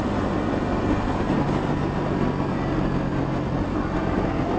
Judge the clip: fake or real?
real